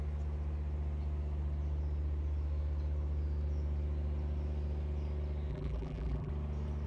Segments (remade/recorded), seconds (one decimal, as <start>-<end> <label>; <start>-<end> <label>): 0.0-5.5 recorded; 5.5-6.3 remade; 6.3-6.9 recorded